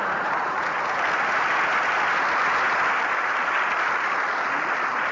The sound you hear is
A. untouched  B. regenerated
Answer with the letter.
A